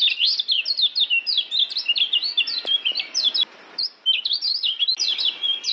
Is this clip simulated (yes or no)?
no